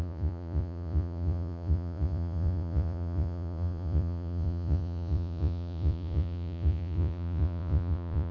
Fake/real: fake